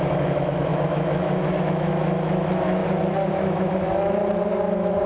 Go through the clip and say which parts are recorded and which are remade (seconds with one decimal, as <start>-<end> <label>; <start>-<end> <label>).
0.0-2.8 remade; 2.8-3.3 recorded; 3.3-4.2 remade; 4.2-5.1 recorded